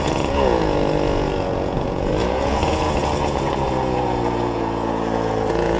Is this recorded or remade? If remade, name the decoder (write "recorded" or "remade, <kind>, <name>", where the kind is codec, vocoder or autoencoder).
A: remade, vocoder, Vocos